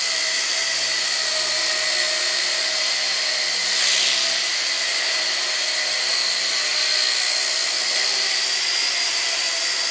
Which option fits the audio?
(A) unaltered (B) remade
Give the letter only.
A